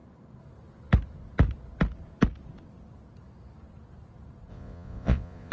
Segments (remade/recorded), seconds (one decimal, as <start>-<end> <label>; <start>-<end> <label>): 0.0-4.5 recorded; 4.5-5.5 remade